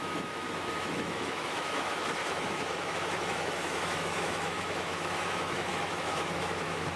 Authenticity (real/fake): fake